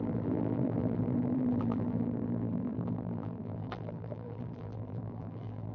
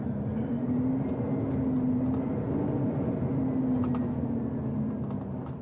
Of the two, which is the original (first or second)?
second